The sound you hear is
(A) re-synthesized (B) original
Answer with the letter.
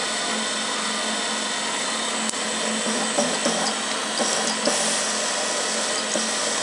B